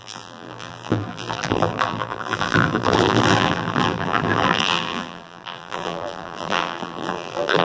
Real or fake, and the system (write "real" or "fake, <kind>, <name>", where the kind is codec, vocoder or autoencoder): fake, vocoder, BigVGAN v2